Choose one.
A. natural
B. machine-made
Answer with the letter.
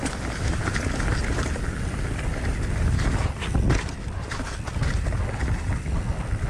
A